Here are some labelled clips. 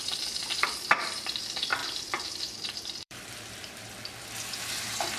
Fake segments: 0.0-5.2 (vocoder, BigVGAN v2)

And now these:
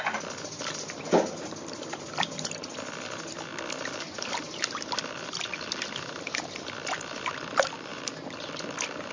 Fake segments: 3.5-6.9 (vocoder, BigVGAN v2)